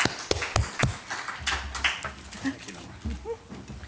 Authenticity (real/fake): real